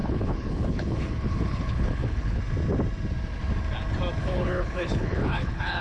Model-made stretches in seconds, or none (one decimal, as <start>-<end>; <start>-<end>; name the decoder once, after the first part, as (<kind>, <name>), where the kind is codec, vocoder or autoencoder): 0.0-2.4 (codec, HILCodec); 4.2-5.8